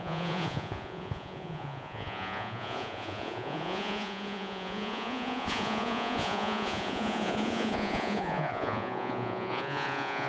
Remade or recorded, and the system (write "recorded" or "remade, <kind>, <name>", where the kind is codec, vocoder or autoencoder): remade, vocoder, Vocos